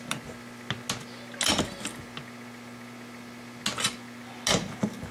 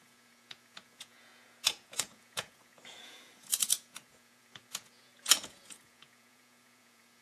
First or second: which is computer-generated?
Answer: second